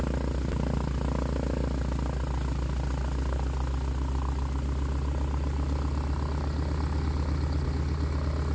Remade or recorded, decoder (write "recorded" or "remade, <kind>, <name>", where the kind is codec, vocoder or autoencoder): recorded